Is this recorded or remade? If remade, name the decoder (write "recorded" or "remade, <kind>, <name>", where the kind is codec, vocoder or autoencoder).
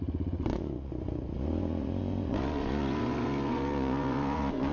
remade, vocoder, Vocos